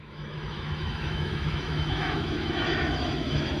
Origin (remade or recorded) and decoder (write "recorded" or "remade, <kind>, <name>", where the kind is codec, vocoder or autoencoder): remade, autoencoder, DAC-VAE